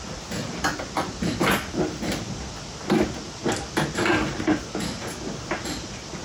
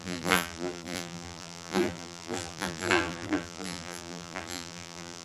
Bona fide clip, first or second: first